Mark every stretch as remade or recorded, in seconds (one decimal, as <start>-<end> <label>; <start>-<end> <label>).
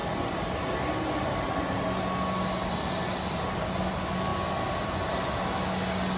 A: 0.0-6.2 recorded